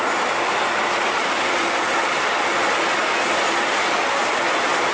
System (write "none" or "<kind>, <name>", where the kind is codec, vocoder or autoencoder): none